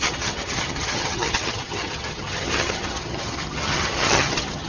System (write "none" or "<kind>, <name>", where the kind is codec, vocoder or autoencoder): vocoder, HiFi-GAN